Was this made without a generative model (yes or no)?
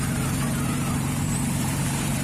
no